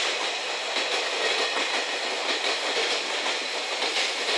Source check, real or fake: real